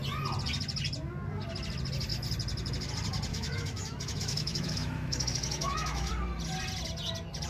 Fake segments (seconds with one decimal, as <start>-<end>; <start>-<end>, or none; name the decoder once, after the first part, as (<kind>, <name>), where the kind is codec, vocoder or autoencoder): 3.3-6.1 (autoencoder, DAC-VAE)